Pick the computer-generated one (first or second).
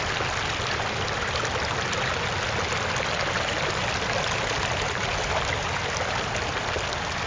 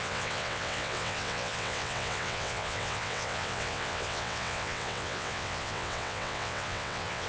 second